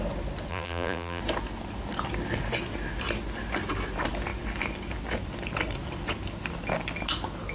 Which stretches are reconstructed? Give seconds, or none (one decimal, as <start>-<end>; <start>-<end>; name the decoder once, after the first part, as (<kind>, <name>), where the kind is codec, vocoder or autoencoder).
0.5-1.2 (vocoder, BigVGAN v2)